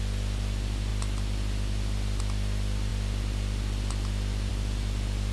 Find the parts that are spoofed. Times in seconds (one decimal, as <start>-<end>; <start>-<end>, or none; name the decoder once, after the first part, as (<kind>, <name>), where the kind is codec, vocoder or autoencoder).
none